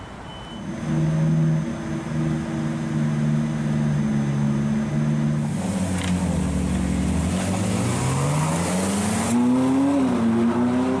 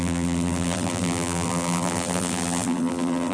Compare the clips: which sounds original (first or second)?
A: first